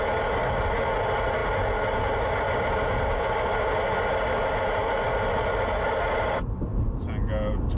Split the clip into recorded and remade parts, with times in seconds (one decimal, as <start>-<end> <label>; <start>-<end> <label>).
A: 0.0-7.8 recorded